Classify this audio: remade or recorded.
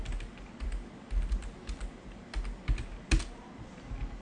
recorded